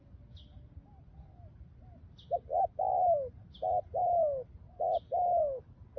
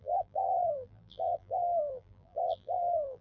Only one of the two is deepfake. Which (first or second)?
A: second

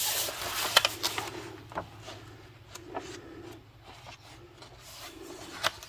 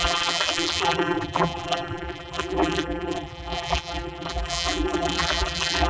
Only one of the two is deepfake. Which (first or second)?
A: second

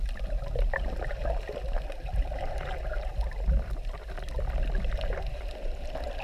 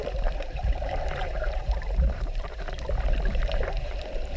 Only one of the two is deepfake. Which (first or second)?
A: second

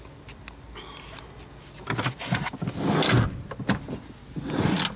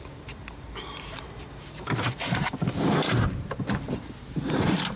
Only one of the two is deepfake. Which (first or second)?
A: second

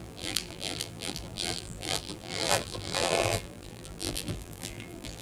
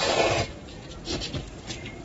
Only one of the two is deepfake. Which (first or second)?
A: first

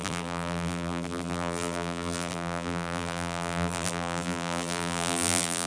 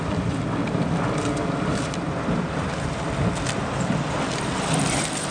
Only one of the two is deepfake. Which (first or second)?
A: first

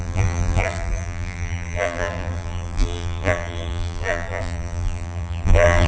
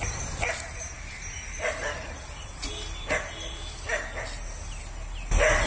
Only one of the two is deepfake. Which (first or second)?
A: first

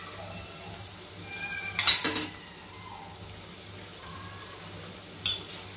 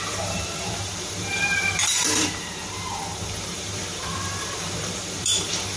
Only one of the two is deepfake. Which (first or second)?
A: second